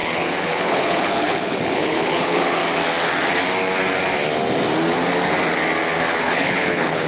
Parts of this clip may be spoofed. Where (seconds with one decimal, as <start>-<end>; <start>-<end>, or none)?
0.0-2.6; 6.2-7.1